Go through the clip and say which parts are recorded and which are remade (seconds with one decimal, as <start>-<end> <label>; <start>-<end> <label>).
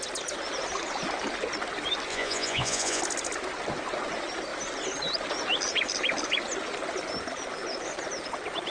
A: 0.0-2.1 recorded; 2.1-3.0 remade; 3.0-8.7 recorded